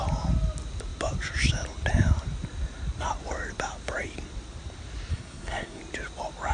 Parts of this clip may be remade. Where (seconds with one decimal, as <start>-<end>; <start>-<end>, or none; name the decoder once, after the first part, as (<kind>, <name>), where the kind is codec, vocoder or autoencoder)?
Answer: 5.1-5.8 (codec, SNAC)